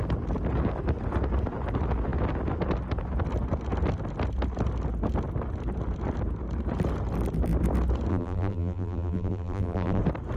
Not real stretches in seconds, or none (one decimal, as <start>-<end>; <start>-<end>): 8.1-10.0